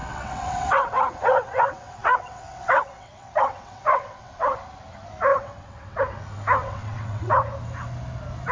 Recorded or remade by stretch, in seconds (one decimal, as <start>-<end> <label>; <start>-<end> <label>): 0.0-4.6 remade; 4.6-5.3 recorded; 5.3-6.0 remade; 6.0-6.6 recorded; 6.6-7.4 remade; 7.4-8.5 recorded